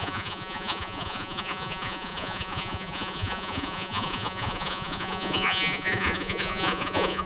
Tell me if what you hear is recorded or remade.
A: remade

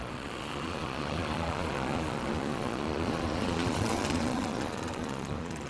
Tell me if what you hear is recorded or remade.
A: remade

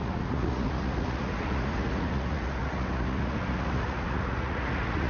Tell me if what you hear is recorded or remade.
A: remade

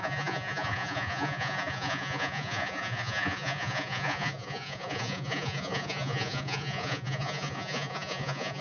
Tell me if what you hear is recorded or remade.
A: remade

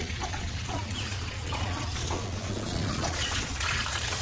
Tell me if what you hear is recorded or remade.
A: remade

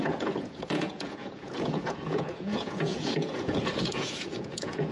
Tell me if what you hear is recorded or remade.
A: remade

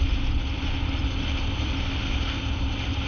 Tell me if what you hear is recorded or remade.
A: recorded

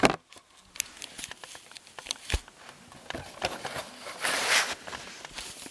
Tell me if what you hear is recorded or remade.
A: recorded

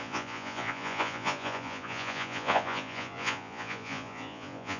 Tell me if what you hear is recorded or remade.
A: remade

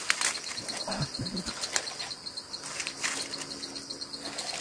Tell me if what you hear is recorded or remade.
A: recorded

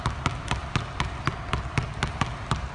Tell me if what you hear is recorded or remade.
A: recorded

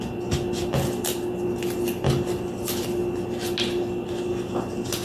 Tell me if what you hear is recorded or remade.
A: recorded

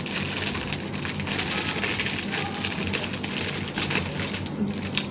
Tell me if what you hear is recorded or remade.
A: recorded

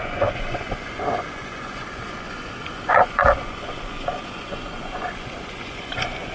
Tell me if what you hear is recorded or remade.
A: remade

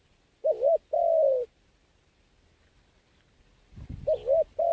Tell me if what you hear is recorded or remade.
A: recorded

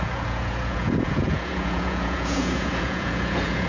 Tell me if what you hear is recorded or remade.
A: remade